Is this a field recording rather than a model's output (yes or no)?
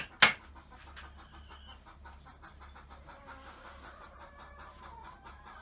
yes